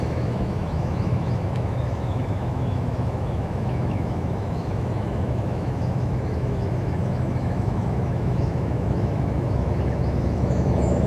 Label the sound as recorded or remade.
remade